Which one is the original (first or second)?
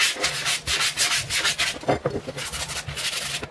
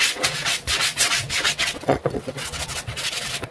first